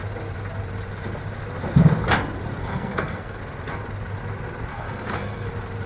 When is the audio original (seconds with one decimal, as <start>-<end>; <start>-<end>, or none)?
0.0-2.6; 3.4-4.7; 5.5-5.9